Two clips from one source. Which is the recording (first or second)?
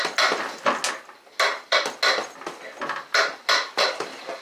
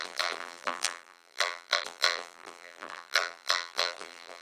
first